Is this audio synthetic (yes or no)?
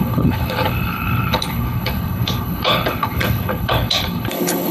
yes